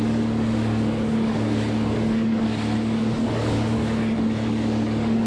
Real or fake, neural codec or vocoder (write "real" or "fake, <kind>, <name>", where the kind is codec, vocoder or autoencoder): fake, codec, DAC